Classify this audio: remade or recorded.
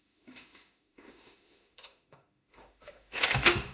remade